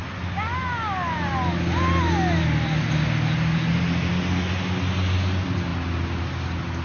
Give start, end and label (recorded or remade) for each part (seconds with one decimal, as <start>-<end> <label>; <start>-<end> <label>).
0.0-6.8 recorded